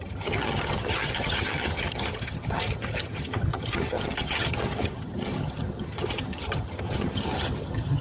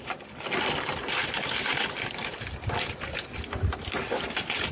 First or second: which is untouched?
second